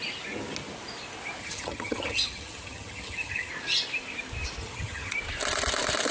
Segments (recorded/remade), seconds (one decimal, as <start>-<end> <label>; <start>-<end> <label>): 0.0-1.4 recorded; 1.4-3.5 remade; 3.5-4.6 recorded; 4.6-5.1 remade; 5.1-6.1 recorded